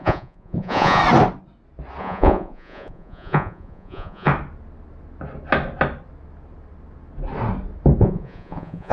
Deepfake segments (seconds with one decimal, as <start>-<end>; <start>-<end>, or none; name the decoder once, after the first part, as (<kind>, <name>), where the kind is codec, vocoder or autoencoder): 0.0-1.0 (vocoder, Vocos); 2.0-4.3; 8.0-8.9